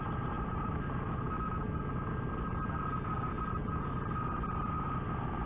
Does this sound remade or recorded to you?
recorded